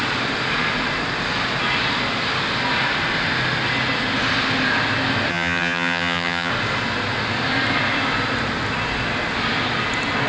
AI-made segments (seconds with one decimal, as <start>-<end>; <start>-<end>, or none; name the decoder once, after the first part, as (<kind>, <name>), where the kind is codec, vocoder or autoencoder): 5.3-6.5 (vocoder, HiFi-GAN)